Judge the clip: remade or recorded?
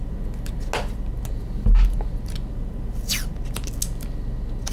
recorded